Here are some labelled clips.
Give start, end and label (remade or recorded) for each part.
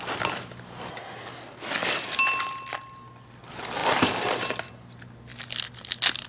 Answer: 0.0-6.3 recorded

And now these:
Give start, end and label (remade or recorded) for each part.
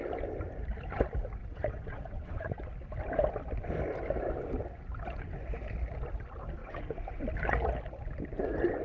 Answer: 0.0-1.4 recorded; 1.4-2.6 remade; 2.6-6.6 recorded; 6.6-7.2 remade; 7.2-8.8 recorded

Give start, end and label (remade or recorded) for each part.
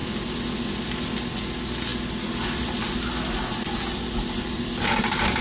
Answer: 0.0-5.4 recorded